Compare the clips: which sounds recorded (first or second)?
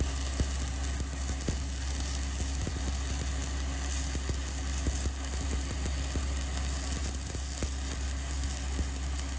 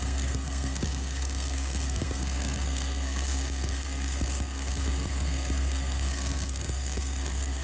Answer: first